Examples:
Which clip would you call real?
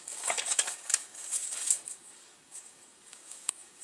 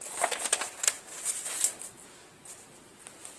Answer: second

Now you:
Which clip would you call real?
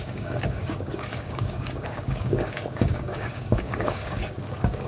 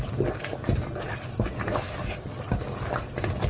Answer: second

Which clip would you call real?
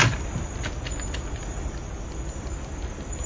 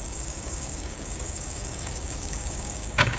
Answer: first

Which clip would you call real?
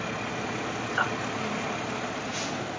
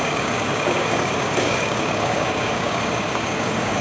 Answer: first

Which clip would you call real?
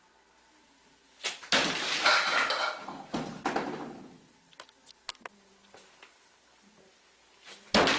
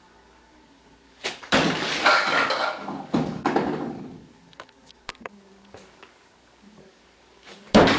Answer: first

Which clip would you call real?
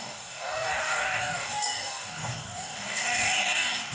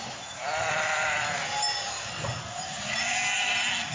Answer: second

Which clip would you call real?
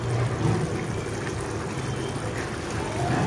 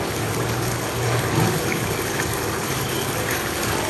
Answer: first